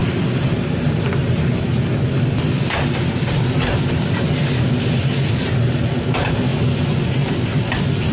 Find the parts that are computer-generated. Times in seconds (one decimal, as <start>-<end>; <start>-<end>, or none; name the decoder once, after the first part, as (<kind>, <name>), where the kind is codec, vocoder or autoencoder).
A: none